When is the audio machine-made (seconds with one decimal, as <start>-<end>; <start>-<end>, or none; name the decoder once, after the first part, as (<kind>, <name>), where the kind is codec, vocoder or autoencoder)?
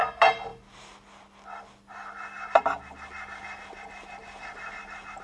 none